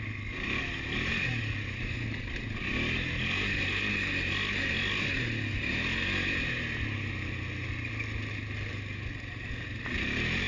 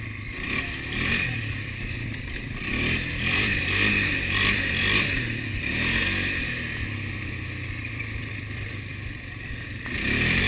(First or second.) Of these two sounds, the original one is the first